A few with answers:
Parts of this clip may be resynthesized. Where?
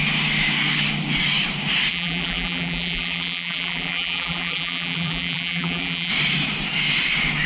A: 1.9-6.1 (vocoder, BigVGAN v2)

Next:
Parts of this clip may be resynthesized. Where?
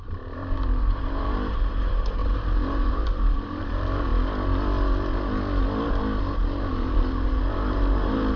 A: 0.0-4.1 (vocoder, BigVGAN v2); 6.2-8.4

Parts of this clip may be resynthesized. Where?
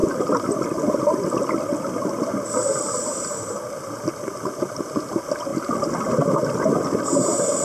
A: none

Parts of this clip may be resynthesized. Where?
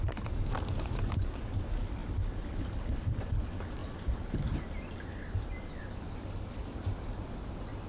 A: 0.0-2.0 (vocoder, BigVGAN v2); 3.3-3.8; 5.8-7.9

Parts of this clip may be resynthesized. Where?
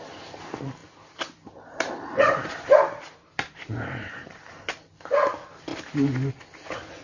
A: 0.8-4.7 (vocoder, BigVGAN v2)